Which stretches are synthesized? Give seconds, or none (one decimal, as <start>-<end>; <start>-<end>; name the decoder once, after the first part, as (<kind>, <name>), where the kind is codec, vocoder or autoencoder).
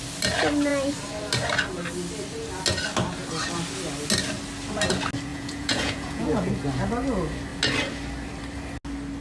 5.3-6.5 (vocoder, Vocos)